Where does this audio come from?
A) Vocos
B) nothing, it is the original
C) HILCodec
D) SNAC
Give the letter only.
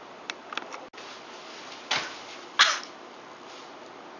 B